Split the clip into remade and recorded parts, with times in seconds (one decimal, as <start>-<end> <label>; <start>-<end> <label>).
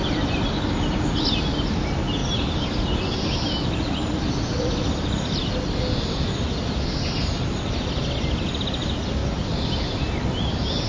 0.0-10.9 recorded